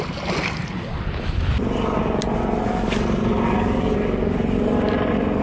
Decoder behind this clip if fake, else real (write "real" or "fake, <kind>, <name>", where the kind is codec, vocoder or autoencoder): real